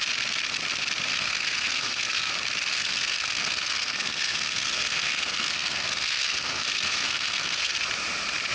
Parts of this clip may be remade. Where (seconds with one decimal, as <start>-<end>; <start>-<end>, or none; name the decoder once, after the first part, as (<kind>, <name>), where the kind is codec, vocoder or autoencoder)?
1.1-2.3 (codec, SNAC); 2.7-7.7